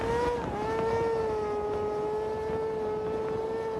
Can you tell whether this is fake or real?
real